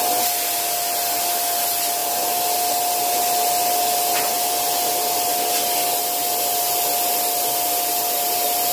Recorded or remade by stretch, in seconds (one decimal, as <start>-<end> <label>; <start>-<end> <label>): 0.0-8.7 recorded